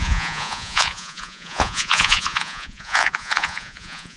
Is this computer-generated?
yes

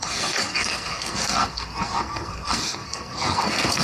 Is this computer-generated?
yes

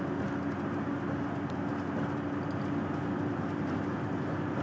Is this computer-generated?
no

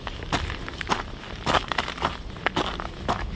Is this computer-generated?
no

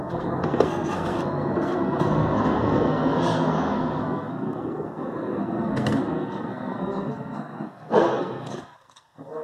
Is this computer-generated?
yes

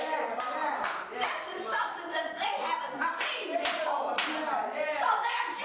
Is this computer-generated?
no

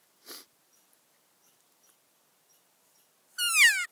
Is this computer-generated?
no